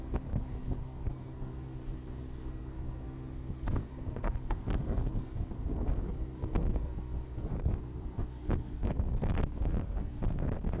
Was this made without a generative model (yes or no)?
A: no